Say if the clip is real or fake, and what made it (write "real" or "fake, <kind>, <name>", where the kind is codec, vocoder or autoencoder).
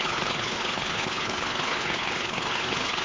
fake, codec, HILCodec